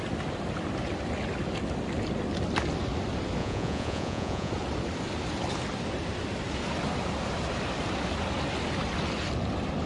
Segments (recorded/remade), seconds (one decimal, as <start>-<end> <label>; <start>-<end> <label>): 0.0-3.4 recorded; 3.4-4.5 remade; 4.5-9.9 recorded